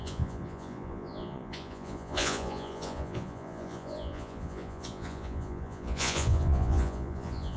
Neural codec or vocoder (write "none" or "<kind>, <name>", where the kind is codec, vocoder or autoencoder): vocoder, Vocos